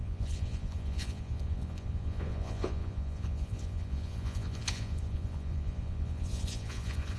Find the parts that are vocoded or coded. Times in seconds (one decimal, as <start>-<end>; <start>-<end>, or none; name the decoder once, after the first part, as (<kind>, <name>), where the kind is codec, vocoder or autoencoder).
0.0-7.2 (vocoder, Vocos)